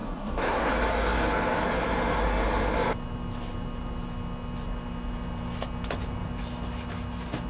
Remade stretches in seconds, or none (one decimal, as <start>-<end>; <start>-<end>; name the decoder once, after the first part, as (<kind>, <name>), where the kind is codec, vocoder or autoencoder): 0.0-0.7 (codec, SNAC)